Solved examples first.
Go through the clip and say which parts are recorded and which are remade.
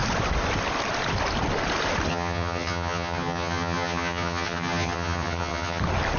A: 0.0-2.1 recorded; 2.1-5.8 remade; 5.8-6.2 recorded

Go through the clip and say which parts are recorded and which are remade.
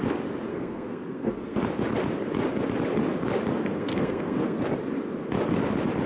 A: 0.0-0.5 recorded; 0.5-1.6 remade; 1.6-3.7 recorded; 3.7-4.6 remade; 4.6-6.1 recorded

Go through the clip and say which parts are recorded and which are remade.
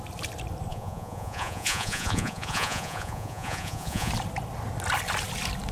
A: 0.0-0.7 recorded; 0.7-4.1 remade; 4.1-5.7 recorded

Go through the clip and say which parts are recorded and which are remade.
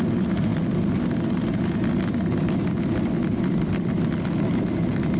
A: 0.0-5.2 recorded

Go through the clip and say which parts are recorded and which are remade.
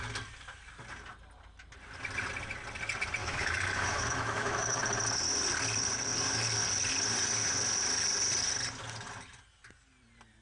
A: 0.0-3.2 recorded; 3.2-4.8 remade; 4.8-10.4 recorded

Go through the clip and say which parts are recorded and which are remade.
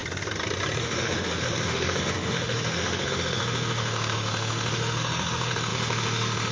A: 0.0-0.8 recorded; 0.8-6.5 remade